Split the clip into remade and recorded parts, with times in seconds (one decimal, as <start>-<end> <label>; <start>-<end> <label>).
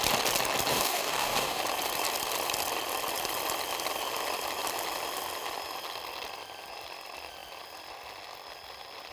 0.0-0.7 recorded; 0.7-1.6 remade; 1.6-9.1 recorded